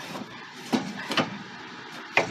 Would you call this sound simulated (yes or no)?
yes